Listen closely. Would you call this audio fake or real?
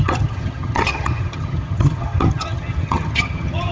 fake